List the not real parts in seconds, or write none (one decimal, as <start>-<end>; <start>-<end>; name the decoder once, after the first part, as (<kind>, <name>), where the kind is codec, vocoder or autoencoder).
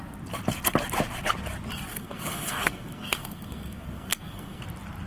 1.9-4.6 (codec, SNAC)